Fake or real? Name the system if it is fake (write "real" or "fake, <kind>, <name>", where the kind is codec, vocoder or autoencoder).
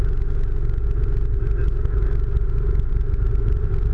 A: real